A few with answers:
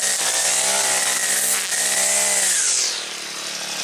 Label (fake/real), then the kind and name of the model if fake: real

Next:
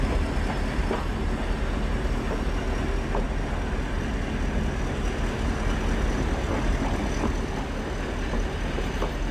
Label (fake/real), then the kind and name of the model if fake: real